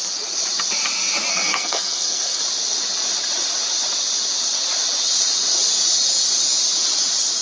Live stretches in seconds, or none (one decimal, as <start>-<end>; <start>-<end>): 0.0-1.3; 2.4-7.4